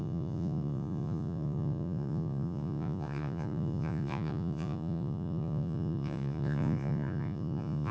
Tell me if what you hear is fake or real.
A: fake